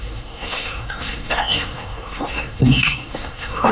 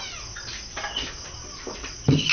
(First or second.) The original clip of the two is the second